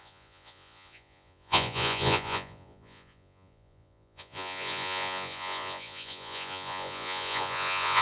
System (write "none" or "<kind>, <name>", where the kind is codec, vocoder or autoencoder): vocoder, Vocos